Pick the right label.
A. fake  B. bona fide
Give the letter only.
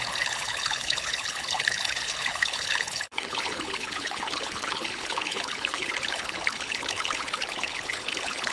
A